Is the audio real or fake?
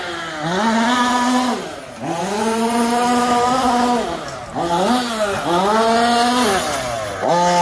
real